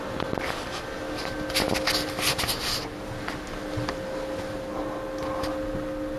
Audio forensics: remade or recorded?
recorded